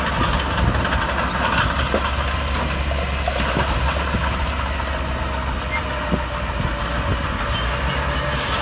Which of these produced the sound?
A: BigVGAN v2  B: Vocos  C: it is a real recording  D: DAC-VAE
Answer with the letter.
C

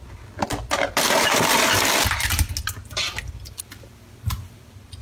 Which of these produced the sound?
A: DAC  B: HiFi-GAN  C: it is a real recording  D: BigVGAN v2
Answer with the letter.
C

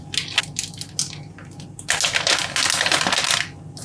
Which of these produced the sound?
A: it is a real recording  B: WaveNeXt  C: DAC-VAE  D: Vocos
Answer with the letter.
A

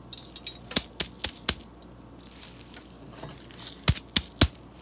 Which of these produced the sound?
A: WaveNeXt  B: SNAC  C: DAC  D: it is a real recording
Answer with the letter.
D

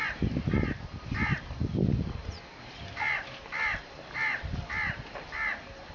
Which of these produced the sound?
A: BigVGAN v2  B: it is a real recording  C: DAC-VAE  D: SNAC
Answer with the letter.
B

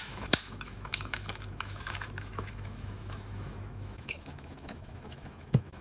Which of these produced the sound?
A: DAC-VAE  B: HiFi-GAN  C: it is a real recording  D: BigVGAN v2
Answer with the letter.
A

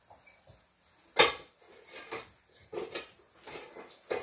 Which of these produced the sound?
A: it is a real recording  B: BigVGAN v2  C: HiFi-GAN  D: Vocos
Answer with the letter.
A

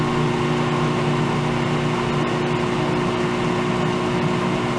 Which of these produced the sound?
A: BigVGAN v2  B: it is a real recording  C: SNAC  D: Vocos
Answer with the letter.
B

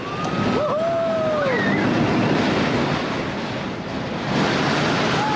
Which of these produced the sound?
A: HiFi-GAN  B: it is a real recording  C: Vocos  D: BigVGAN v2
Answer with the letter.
B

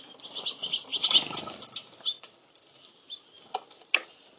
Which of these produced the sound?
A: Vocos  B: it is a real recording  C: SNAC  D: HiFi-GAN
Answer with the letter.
B